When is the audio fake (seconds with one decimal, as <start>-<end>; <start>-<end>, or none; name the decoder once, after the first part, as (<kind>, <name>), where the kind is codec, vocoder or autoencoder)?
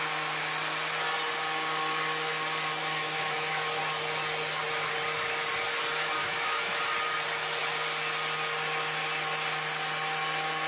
2.8-3.8 (autoencoder, DAC-VAE); 6.2-6.8